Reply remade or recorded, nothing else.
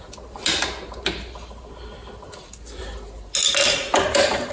recorded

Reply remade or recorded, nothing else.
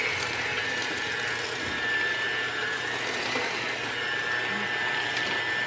recorded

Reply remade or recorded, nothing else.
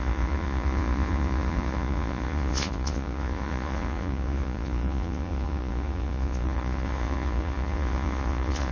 remade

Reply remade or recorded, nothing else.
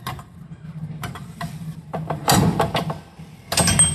recorded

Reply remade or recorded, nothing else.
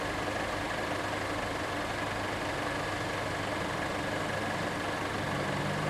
recorded